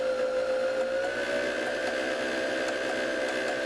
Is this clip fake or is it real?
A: real